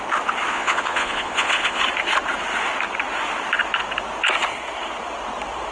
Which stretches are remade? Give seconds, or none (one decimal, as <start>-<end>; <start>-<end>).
0.5-1.8